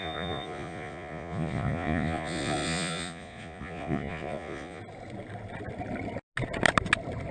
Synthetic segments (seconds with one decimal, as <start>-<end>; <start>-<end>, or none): 0.0-4.8